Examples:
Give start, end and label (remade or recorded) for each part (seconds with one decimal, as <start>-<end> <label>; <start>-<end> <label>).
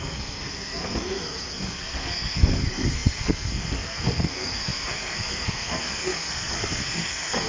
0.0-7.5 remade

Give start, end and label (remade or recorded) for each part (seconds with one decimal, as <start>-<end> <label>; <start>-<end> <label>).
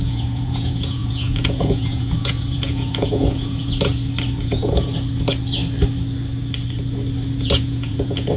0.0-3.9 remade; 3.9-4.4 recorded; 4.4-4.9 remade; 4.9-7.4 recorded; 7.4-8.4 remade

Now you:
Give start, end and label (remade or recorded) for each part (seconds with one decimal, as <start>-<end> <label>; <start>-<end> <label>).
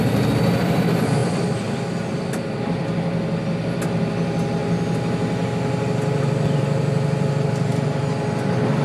0.0-8.8 recorded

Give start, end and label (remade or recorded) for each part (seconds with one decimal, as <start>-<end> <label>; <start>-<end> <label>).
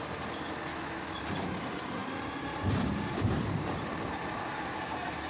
0.0-0.7 recorded; 0.7-1.2 remade; 1.2-5.3 recorded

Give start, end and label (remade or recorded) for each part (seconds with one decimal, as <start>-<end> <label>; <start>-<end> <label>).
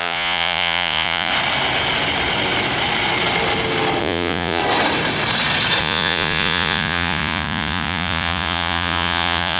0.0-1.3 remade; 1.3-4.0 recorded; 4.0-4.6 remade; 4.6-5.8 recorded; 5.8-9.6 remade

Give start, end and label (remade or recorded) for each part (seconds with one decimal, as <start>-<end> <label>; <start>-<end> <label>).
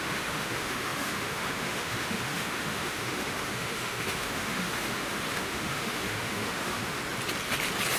0.0-7.0 remade; 7.0-8.0 recorded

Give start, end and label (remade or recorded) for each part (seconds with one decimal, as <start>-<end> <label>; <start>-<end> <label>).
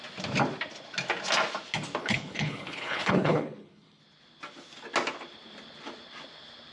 0.0-2.0 recorded; 2.0-4.0 remade; 4.0-6.7 recorded